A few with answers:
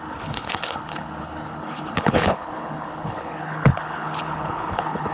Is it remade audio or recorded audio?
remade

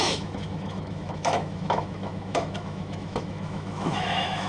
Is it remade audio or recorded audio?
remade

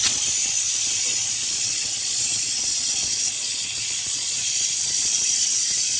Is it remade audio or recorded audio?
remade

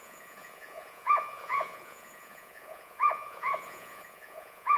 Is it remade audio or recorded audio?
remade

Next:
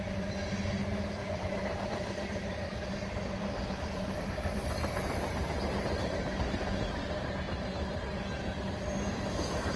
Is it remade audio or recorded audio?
remade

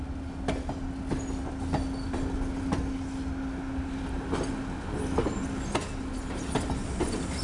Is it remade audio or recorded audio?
recorded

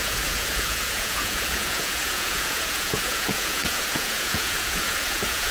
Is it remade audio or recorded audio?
remade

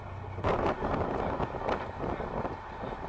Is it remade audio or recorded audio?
recorded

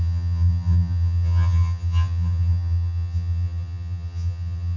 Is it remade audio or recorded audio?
remade